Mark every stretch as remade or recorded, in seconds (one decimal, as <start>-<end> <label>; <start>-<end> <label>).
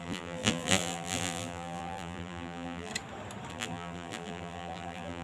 0.0-2.9 remade; 2.9-3.5 recorded; 3.5-5.2 remade